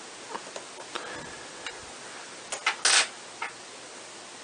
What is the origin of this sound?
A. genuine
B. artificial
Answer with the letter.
A